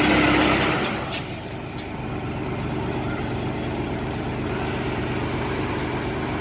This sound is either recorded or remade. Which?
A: recorded